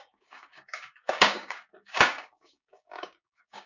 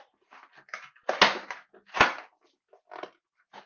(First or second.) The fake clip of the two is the first